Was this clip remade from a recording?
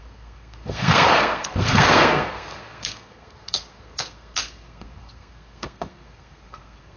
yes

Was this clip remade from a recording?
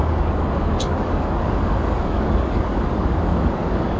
yes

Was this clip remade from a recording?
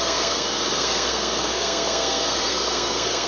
yes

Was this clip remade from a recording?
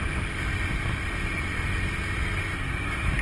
no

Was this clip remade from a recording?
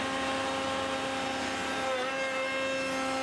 no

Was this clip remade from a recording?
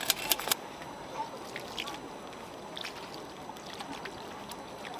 no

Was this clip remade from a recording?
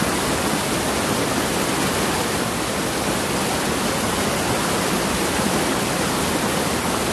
no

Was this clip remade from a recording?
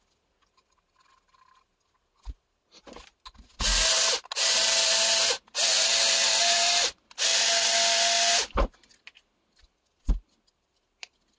no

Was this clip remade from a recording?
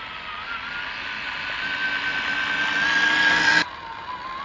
no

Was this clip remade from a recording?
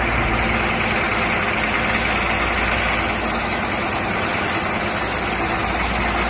no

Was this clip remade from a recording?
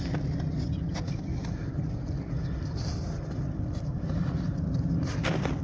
no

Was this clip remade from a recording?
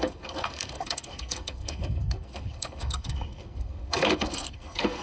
yes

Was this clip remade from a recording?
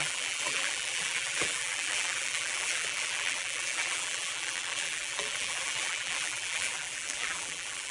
yes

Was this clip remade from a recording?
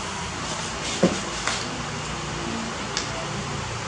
no